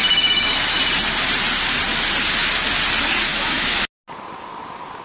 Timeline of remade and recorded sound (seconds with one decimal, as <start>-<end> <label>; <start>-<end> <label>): 0.0-0.8 remade; 0.8-3.3 recorded; 3.3-3.8 remade; 3.8-5.0 recorded